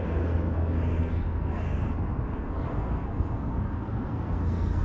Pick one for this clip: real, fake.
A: fake